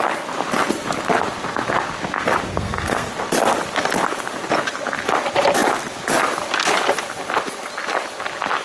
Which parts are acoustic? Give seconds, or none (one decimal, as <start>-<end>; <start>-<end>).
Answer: 0.0-2.5; 3.1-8.6